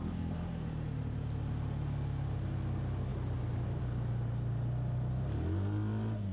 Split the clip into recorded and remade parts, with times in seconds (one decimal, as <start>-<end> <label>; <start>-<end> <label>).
0.0-3.1 recorded; 3.1-3.8 remade; 3.8-6.3 recorded